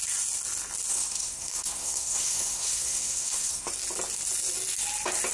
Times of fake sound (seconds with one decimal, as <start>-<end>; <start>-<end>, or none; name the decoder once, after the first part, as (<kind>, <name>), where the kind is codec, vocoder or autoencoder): 0.9-3.7 (codec, SNAC)